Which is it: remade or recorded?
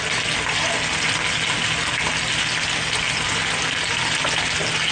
recorded